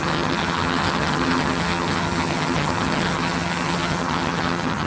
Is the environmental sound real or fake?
fake